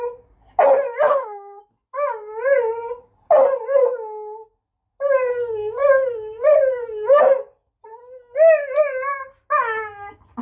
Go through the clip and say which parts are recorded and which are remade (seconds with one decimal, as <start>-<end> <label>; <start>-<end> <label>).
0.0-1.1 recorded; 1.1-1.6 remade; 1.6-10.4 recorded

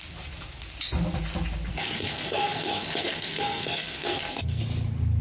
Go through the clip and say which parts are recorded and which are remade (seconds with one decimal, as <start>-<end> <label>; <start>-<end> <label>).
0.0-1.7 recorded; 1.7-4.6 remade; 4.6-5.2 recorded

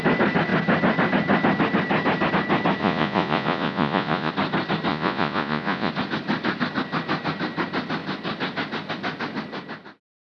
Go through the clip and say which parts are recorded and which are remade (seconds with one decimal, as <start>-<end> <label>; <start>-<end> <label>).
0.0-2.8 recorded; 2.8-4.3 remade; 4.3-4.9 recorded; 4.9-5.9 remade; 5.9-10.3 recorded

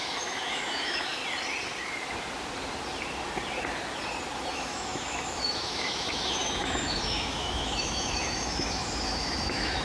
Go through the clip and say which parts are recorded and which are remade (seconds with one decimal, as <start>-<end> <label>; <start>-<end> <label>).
0.0-1.2 remade; 1.2-4.5 recorded; 4.5-9.8 remade

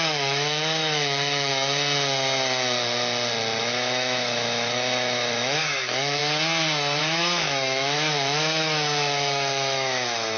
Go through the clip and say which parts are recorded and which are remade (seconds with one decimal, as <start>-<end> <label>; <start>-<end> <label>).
0.0-1.5 remade; 1.5-3.6 recorded; 3.6-6.2 remade; 6.2-7.0 recorded; 7.0-10.4 remade